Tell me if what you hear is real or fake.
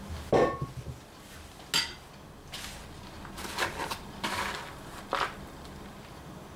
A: real